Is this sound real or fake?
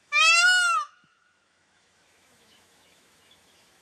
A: fake